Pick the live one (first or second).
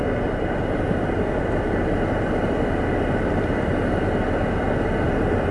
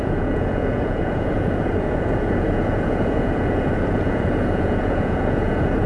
first